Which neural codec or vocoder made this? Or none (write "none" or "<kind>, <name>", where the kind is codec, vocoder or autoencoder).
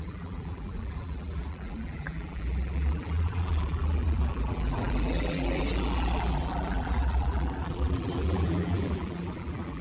vocoder, BigVGAN v2